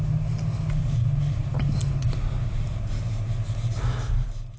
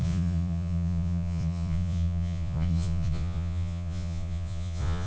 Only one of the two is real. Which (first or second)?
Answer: first